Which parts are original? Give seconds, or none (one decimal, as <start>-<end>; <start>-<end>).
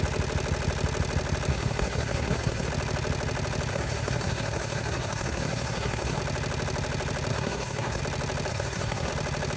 0.0-1.5; 2.7-3.7; 6.2-7.3; 8.0-8.5; 9.1-9.6